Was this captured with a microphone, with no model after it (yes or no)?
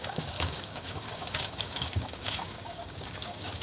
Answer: no